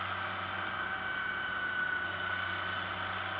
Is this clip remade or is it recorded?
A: recorded